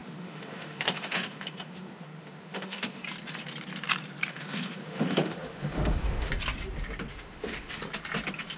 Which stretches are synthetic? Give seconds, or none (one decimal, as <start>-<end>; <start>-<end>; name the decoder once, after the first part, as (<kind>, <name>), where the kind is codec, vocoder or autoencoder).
0.0-3.0 (autoencoder, DAC-VAE); 4.3-6.3; 7.1-7.8